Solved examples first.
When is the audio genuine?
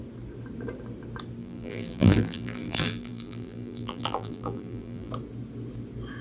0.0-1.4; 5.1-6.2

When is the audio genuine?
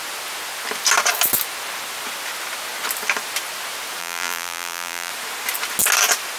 0.0-4.0; 5.1-6.4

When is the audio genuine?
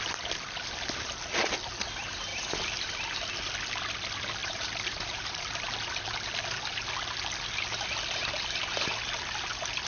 0.0-4.4; 5.7-9.9